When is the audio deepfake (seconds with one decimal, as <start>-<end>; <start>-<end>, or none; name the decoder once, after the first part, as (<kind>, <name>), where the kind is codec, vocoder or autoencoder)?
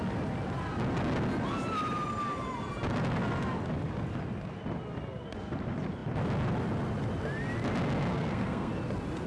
8.1-8.7 (codec, SNAC)